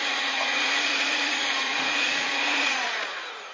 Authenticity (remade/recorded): remade